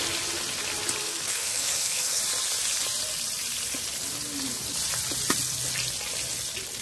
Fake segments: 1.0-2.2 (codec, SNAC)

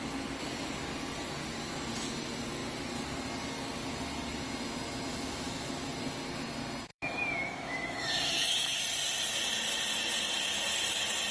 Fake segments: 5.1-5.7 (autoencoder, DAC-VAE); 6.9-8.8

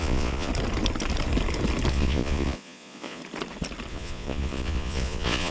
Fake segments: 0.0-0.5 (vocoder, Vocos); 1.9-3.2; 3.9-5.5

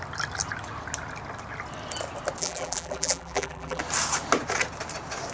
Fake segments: 2.4-3.8 (vocoder, BigVGAN v2)

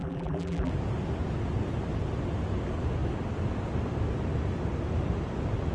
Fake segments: 0.0-0.7 (vocoder, BigVGAN v2)